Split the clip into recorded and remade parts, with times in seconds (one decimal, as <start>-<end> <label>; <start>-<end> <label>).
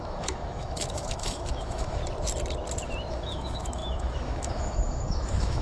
0.0-2.0 remade; 2.0-3.1 recorded; 3.1-5.6 remade